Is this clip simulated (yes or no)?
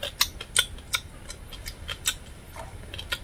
no